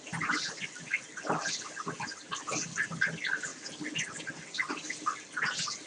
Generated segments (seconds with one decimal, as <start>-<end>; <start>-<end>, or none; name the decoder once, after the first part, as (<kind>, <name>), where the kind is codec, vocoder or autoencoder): none